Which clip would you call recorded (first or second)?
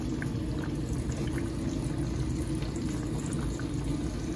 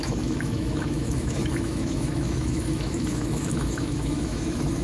first